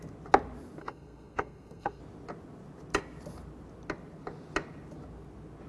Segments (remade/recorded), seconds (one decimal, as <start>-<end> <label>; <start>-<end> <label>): 0.0-0.8 recorded; 0.8-2.0 remade; 2.0-5.7 recorded